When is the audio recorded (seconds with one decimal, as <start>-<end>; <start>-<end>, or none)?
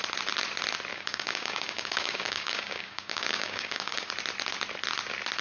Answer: 0.0-0.9; 4.1-5.4